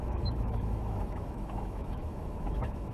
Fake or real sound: fake